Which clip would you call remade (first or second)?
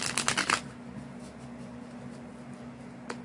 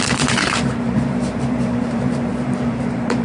second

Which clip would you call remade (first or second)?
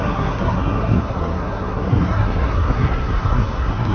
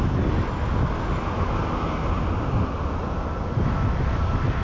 first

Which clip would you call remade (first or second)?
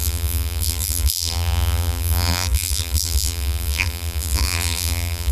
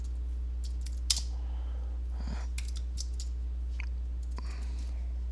first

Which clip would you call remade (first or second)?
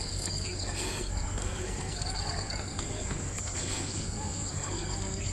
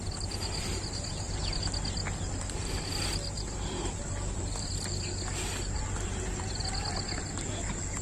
first